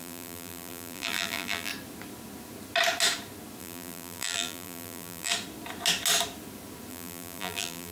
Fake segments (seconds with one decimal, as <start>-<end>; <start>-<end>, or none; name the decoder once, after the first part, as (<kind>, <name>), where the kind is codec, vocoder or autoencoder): 0.0-1.7 (vocoder, BigVGAN v2); 3.6-5.3; 6.9-7.9